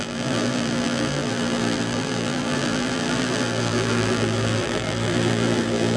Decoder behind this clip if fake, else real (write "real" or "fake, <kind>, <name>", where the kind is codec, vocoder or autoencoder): fake, vocoder, BigVGAN v2